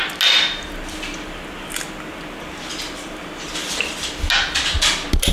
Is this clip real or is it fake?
real